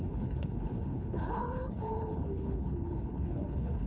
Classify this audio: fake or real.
fake